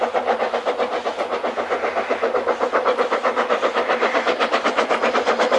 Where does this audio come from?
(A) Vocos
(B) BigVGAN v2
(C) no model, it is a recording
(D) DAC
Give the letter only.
C